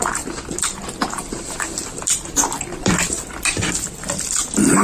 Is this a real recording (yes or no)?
no